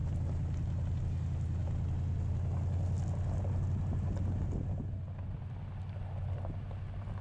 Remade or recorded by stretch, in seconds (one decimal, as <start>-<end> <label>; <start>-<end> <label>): 0.0-7.2 recorded